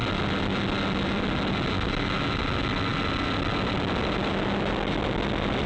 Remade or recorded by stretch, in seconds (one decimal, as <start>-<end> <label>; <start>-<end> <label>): 0.0-5.7 recorded